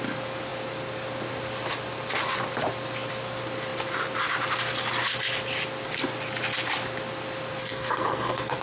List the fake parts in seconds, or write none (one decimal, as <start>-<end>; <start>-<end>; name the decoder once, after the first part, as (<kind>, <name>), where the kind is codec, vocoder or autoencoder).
7.6-8.6 (codec, SNAC)